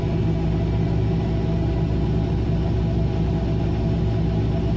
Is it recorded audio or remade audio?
recorded